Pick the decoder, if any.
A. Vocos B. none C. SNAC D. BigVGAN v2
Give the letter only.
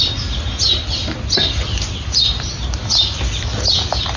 B